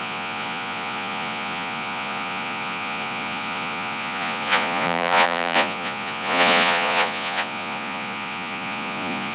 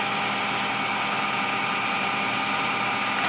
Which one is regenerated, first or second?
first